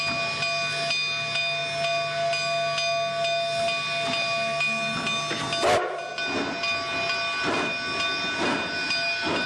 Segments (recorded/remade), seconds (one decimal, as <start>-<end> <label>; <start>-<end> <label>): 0.0-9.5 recorded

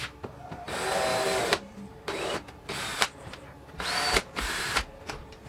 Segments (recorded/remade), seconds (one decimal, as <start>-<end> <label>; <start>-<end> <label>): 0.0-1.1 recorded; 1.1-4.4 remade; 4.4-5.5 recorded

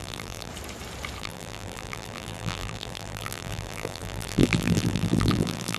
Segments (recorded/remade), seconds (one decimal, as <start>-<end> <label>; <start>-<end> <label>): 0.0-0.5 remade; 0.5-1.2 recorded; 1.2-5.8 remade

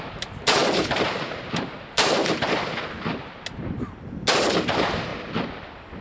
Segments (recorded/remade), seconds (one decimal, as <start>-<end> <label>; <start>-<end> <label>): 0.0-2.2 remade; 2.2-4.3 recorded; 4.3-5.1 remade; 5.1-6.0 recorded

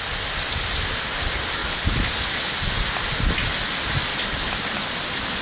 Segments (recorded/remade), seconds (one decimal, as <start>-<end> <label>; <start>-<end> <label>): 0.0-4.1 recorded; 4.1-5.4 remade

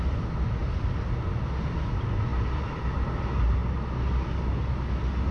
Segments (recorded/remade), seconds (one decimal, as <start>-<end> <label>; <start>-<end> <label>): 0.0-2.3 recorded; 2.3-3.2 remade; 3.2-5.3 recorded

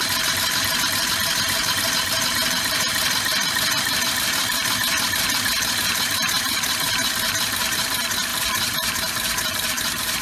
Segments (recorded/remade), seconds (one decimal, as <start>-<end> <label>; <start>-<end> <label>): 0.0-2.9 remade; 2.9-3.8 recorded; 3.8-4.4 remade; 4.4-5.8 recorded; 5.8-10.2 remade